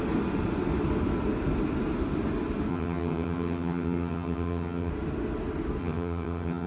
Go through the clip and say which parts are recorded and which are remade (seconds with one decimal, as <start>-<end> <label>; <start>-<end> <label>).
0.0-2.7 recorded; 2.7-4.9 remade; 4.9-5.8 recorded; 5.8-6.7 remade